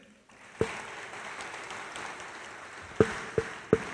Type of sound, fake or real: real